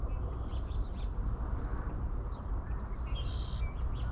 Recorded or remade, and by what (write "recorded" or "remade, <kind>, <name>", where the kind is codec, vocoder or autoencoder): recorded